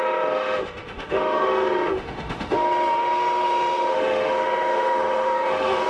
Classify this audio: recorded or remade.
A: remade